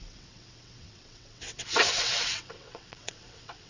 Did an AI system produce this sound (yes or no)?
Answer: yes